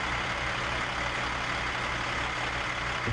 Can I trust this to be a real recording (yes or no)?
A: yes